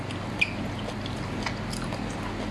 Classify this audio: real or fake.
real